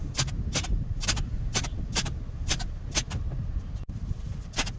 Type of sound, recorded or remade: recorded